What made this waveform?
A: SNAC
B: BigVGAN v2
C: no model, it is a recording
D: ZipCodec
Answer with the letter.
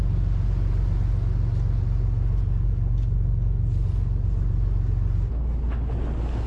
C